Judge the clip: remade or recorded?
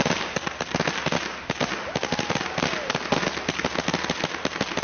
recorded